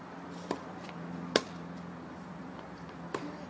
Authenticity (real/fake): fake